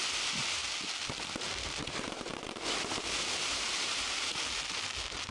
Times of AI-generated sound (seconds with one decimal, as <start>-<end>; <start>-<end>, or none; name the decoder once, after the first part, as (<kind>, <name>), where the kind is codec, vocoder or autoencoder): 0.0-0.6 (vocoder, BigVGAN v2); 1.4-5.3